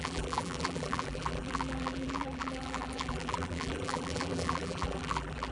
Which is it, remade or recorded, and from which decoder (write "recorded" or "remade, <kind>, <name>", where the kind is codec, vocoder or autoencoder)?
remade, vocoder, BigVGAN v2